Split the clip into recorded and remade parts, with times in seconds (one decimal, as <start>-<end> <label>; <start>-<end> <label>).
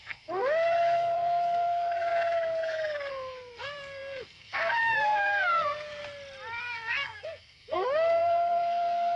0.0-6.0 remade; 6.0-6.6 recorded; 6.6-9.2 remade